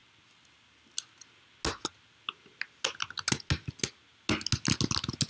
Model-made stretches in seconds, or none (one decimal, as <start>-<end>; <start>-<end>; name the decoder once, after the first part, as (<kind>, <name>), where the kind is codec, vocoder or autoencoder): none